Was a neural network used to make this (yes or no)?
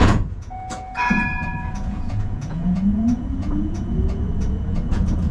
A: yes